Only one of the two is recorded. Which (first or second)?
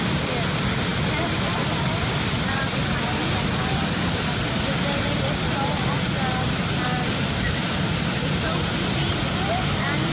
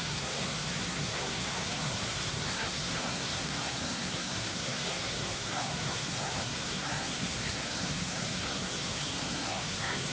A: first